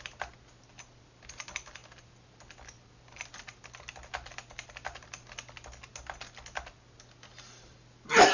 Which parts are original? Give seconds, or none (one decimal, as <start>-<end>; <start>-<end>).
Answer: 0.0-8.3